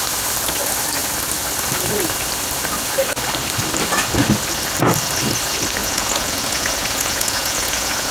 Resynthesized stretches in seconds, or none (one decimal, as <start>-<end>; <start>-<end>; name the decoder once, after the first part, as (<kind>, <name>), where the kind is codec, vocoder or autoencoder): 5.8-8.1 (vocoder, Vocos)